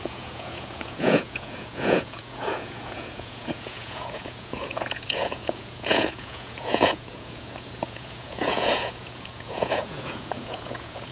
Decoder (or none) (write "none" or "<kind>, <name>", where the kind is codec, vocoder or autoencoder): vocoder, Vocos